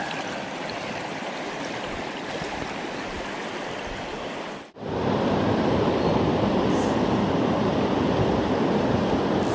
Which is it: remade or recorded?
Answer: recorded